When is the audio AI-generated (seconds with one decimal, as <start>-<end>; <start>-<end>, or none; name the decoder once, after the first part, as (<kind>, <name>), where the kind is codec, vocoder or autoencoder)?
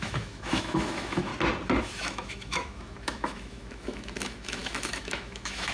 0.0-1.3 (autoencoder, DAC-VAE); 1.8-5.7